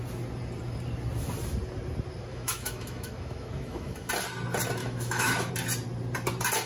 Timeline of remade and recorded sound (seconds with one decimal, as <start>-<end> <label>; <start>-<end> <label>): 0.0-2.3 recorded; 2.3-4.1 remade; 4.1-4.8 recorded; 4.8-5.5 remade; 5.5-6.7 recorded